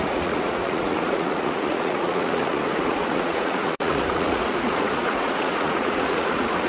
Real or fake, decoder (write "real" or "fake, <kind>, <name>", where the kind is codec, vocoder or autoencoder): fake, vocoder, Vocos